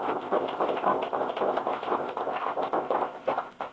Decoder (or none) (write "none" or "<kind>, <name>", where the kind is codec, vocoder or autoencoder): codec, ZipCodec